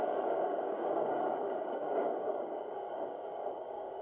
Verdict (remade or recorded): remade